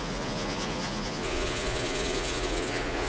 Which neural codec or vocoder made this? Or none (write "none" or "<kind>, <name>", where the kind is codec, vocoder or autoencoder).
vocoder, Vocos